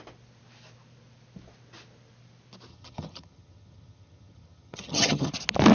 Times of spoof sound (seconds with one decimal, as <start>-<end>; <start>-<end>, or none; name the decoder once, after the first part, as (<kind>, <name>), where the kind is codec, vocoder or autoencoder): 2.7-5.3 (vocoder, HiFi-GAN)